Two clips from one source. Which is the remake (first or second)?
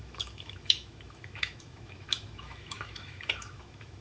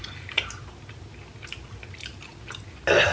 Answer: first